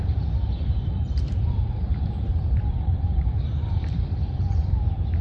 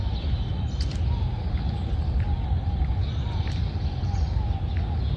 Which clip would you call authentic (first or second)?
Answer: second